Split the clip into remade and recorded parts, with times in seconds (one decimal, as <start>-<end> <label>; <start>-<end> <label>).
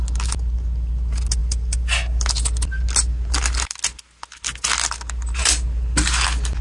0.0-6.6 recorded